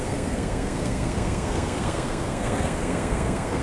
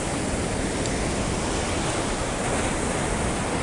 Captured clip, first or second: second